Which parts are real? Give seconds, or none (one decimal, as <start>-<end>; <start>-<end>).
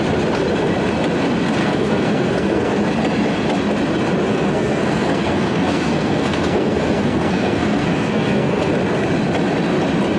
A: 0.0-1.6; 2.8-4.3; 8.7-10.2